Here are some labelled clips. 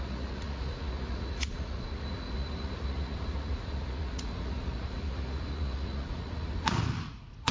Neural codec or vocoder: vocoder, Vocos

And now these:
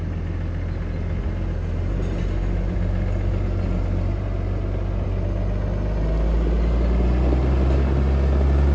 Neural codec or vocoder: none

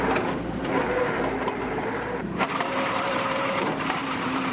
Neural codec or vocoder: vocoder, BigVGAN v2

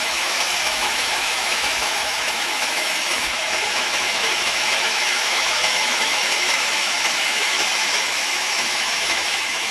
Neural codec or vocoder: autoencoder, DAC-VAE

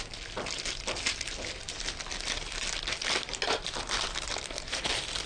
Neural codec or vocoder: none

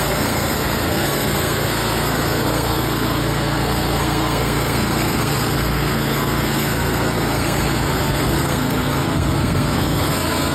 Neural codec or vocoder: codec, SNAC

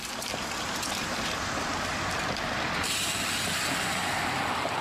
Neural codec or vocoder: none